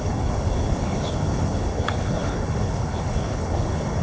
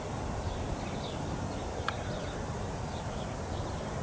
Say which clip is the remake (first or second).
first